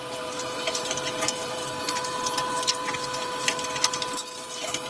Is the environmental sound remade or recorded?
remade